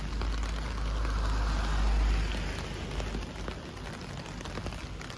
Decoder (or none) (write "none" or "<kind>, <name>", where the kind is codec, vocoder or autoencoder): none